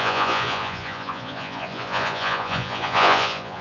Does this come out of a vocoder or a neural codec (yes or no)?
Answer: yes